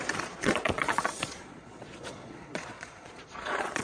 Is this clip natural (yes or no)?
no